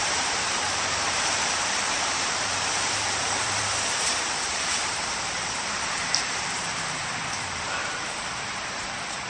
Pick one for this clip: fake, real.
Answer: fake